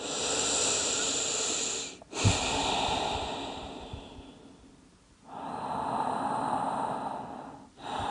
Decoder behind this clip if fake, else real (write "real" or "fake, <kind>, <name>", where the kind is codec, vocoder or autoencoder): real